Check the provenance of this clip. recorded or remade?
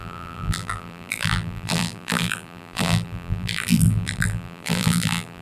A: remade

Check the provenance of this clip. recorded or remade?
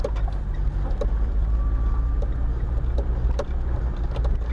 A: recorded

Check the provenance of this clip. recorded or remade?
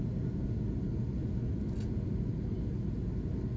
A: recorded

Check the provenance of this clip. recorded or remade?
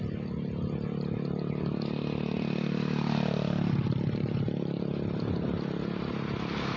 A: recorded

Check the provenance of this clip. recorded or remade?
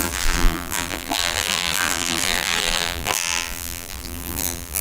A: remade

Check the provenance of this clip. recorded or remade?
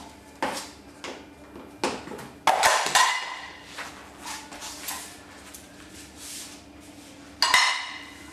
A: recorded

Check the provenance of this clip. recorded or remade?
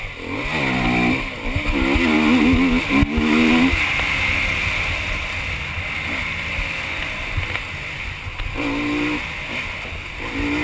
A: recorded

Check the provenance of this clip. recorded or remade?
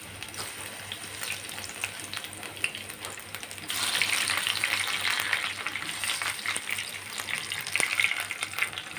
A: recorded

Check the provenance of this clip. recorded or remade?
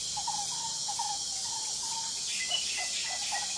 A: recorded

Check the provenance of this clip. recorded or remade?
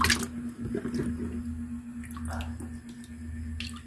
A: recorded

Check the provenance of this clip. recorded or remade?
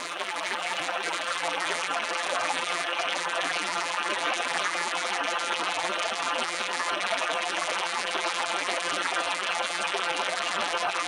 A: remade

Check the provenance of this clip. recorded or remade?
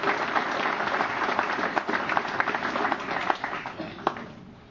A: recorded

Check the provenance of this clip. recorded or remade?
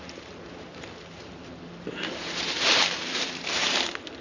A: remade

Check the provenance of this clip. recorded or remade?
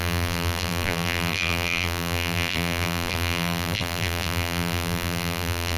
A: remade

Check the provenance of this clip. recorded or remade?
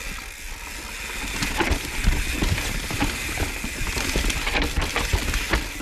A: recorded